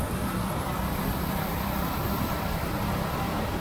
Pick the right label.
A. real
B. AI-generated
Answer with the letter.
A